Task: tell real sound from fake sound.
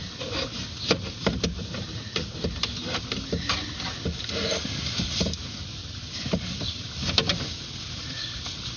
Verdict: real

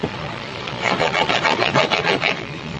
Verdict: fake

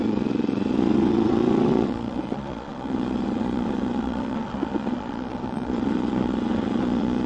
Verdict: fake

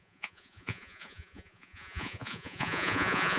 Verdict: fake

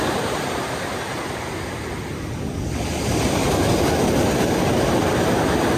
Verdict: real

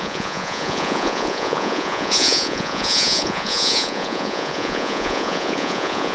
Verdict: fake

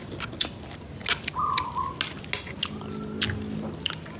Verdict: real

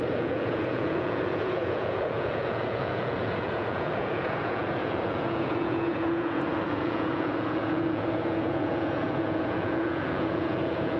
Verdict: fake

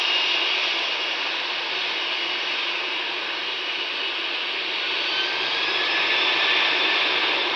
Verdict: real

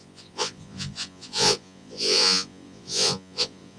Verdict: fake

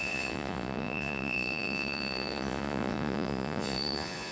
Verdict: fake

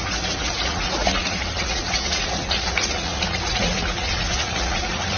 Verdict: fake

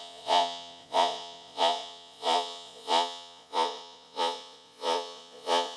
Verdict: fake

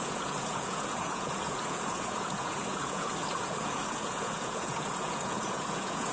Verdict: fake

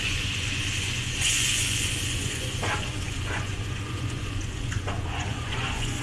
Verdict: fake